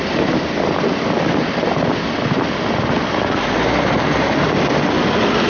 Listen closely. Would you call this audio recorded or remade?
recorded